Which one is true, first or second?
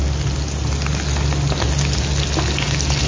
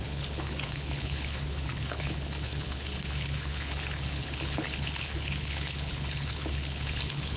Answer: first